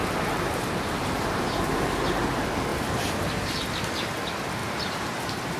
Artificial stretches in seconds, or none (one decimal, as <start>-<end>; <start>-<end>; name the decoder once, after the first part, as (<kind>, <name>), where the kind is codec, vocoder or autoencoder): 0.0-2.0 (vocoder, BigVGAN v2); 2.7-3.8; 4.6-5.6